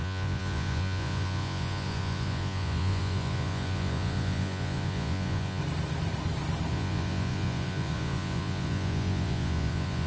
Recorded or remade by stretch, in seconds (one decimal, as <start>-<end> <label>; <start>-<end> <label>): 0.0-5.6 remade; 5.6-6.7 recorded; 6.7-10.1 remade